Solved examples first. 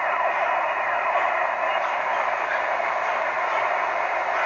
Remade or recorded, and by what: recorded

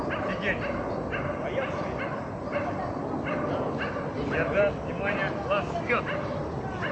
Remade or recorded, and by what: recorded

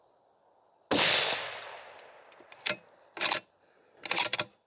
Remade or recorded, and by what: recorded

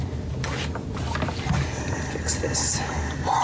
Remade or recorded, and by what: recorded